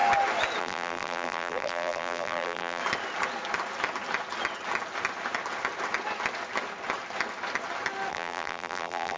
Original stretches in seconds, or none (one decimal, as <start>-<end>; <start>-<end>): 0.0-0.6; 2.8-8.1